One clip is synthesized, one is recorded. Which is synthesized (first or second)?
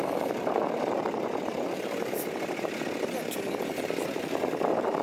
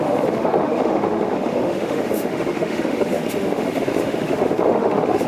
second